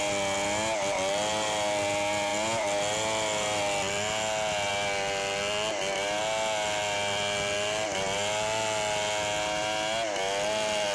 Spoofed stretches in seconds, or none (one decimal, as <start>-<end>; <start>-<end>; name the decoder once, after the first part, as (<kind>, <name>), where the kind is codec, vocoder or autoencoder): none